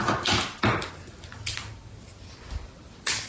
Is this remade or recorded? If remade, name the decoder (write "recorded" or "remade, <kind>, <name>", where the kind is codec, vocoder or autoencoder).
recorded